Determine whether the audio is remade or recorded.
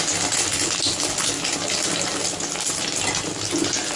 recorded